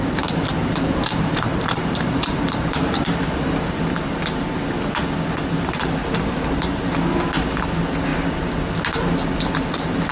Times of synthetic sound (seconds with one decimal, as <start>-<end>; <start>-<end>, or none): 0.6-3.2; 6.0-6.9